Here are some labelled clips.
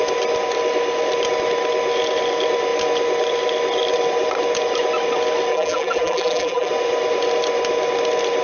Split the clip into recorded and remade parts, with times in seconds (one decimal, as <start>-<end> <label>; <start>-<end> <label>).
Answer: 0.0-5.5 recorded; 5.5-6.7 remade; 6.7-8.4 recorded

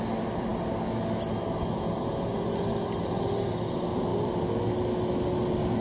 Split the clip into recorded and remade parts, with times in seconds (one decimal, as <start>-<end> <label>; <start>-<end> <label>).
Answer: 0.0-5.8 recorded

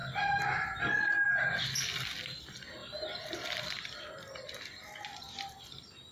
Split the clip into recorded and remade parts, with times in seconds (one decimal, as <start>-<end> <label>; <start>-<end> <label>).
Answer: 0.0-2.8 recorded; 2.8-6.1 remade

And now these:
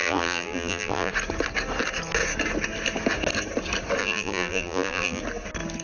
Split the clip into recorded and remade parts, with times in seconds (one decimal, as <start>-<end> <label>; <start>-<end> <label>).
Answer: 0.0-1.1 remade; 1.1-4.0 recorded; 4.0-5.2 remade; 5.2-5.8 recorded

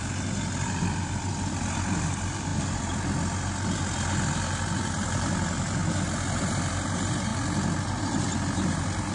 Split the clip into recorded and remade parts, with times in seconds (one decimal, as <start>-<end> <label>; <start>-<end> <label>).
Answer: 0.0-2.5 remade; 2.5-4.1 recorded; 4.1-5.8 remade; 5.8-6.4 recorded; 6.4-7.3 remade; 7.3-8.0 recorded; 8.0-9.1 remade

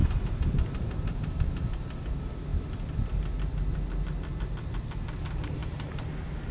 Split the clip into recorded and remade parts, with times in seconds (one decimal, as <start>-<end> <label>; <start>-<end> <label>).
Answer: 0.0-2.0 remade; 2.0-5.6 recorded; 5.6-6.1 remade; 6.1-6.5 recorded